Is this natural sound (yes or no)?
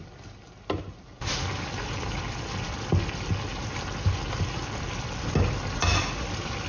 yes